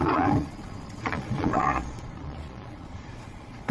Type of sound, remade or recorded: remade